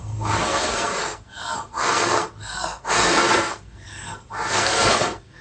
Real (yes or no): no